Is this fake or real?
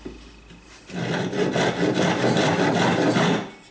real